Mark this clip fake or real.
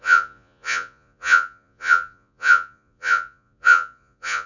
fake